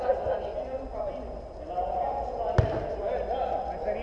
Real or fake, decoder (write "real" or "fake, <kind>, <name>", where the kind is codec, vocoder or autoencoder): real